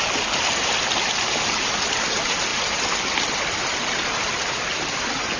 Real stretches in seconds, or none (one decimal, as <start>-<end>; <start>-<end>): 0.0-5.4